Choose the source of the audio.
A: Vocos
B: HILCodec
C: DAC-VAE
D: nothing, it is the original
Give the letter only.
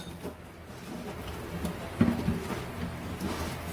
D